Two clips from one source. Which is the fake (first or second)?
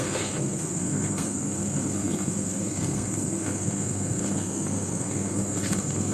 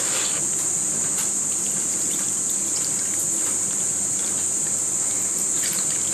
first